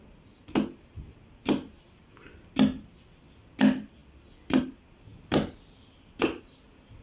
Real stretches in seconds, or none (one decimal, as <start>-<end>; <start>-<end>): 0.0-4.0; 4.6-7.0